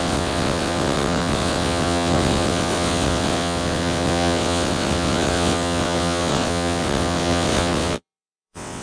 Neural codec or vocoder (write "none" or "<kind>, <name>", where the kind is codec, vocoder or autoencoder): vocoder, WaveNeXt